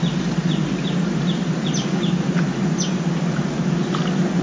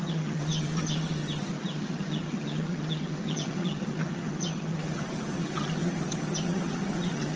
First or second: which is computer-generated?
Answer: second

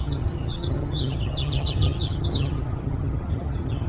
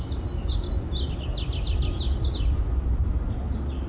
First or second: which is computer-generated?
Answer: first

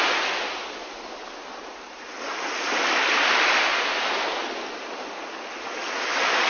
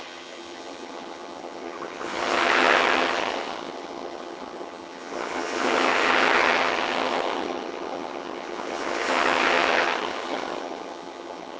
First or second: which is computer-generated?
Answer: second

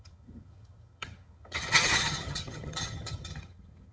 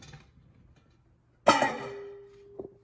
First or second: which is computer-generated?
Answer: first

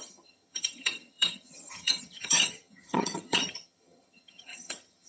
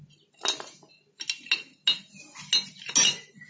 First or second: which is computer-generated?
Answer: first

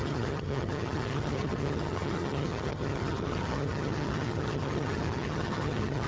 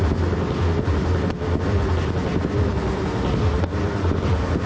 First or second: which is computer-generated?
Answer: first